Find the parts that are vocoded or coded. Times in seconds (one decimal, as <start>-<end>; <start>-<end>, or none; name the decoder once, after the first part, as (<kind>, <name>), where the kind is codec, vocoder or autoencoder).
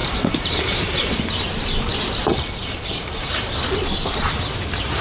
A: 0.0-1.3 (vocoder, BigVGAN v2); 2.3-3.5